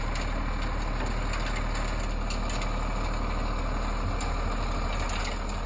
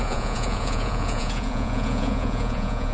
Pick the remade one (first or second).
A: second